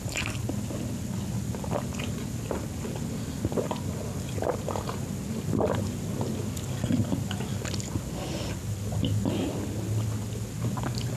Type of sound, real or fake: real